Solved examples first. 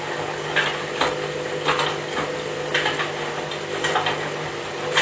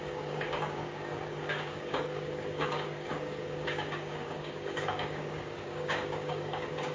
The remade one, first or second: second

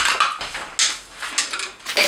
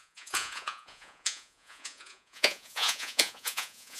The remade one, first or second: second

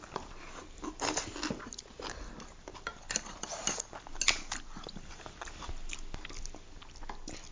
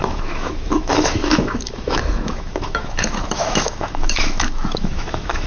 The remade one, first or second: second